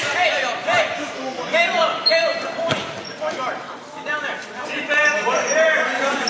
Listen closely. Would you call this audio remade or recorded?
remade